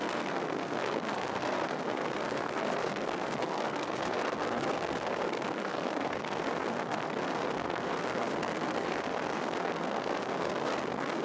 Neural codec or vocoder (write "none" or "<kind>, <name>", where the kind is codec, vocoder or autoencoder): codec, SNAC